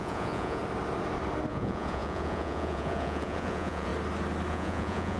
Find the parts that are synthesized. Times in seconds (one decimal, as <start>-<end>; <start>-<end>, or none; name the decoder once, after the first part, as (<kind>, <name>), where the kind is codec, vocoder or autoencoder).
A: 0.0-0.6 (vocoder, Vocos); 1.5-3.9; 4.5-5.2